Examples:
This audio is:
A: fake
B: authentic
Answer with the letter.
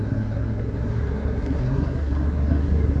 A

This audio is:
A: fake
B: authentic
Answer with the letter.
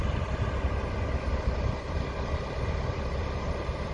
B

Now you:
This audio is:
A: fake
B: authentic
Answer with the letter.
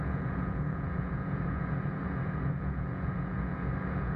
A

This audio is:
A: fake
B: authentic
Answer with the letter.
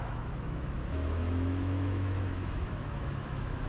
A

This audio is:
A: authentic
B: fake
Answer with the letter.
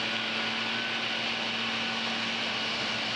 A